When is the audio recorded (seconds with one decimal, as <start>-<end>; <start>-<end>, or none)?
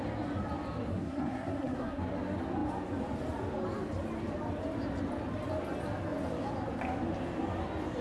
0.0-0.9; 2.0-8.0